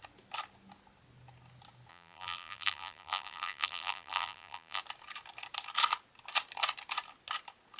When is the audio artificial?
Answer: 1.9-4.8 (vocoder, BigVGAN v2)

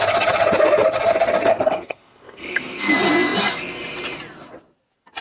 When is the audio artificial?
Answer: 1.5-2.9 (codec, SNAC)

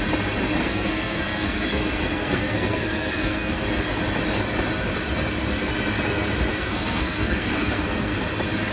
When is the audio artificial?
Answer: 0.6-3.7 (codec, SNAC); 6.5-8.2

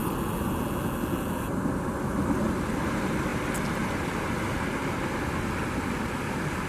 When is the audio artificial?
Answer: none

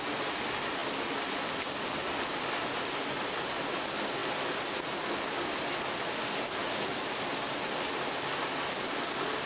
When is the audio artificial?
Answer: none